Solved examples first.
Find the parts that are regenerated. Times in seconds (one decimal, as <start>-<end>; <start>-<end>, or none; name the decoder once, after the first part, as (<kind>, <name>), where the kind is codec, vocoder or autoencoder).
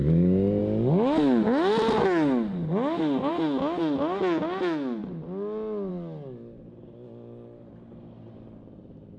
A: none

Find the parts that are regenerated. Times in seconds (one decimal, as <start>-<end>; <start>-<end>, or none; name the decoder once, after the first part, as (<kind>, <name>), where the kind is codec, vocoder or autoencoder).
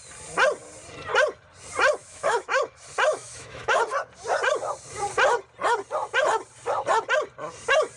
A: 2.0-2.6 (autoencoder, DAC-VAE); 3.1-3.8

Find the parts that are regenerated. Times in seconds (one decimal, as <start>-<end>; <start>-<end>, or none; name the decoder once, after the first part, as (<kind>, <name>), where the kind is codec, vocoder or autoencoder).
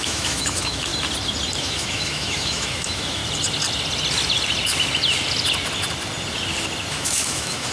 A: 0.0-0.9 (autoencoder, DAC-VAE); 1.6-3.2; 6.9-7.7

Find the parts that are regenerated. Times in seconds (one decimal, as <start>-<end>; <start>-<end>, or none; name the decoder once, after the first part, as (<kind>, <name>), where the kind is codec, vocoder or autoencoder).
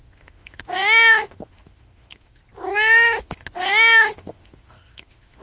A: 0.0-2.4 (autoencoder, DAC-VAE); 3.2-5.4